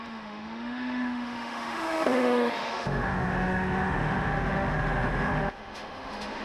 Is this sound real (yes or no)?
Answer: no